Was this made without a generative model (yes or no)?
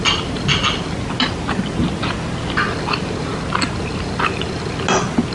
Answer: yes